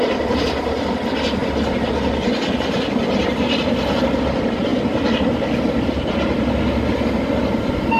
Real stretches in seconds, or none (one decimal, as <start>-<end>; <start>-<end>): 0.0-8.0

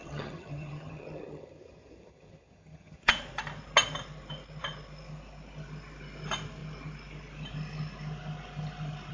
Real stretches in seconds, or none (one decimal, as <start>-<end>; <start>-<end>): 3.1-9.1